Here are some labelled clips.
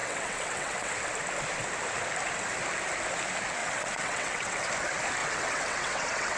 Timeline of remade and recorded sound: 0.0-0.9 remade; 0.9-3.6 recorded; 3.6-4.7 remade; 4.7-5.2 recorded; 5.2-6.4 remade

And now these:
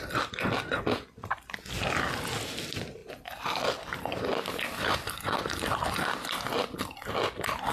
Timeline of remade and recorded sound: 0.0-7.7 recorded

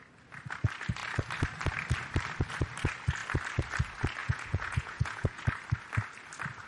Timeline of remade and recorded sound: 0.0-4.2 recorded; 4.2-5.4 remade; 5.4-6.7 recorded

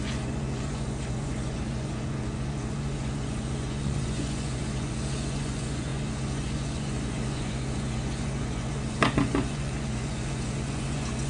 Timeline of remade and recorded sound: 0.0-11.3 remade

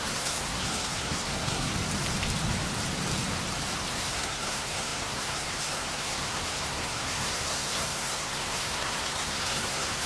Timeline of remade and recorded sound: 0.0-1.7 remade; 1.7-3.9 recorded; 3.9-10.1 remade

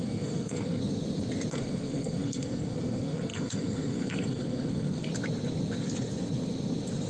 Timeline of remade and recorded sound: 0.0-0.8 remade; 0.8-1.5 recorded; 1.5-5.1 remade; 5.1-7.1 recorded

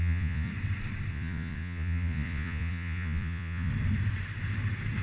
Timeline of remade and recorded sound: 0.0-0.5 remade; 0.5-1.1 recorded; 1.1-3.7 remade; 3.7-5.0 recorded

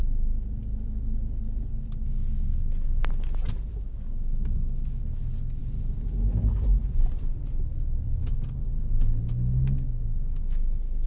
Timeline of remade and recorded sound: 0.0-3.7 recorded; 3.7-5.0 remade; 5.0-8.2 recorded; 8.2-8.7 remade; 8.7-11.1 recorded